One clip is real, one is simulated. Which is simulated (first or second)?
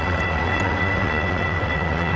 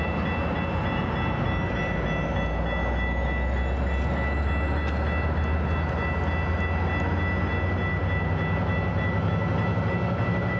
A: first